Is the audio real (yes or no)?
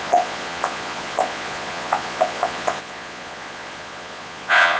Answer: no